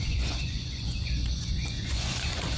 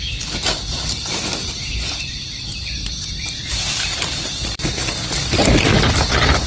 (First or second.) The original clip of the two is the second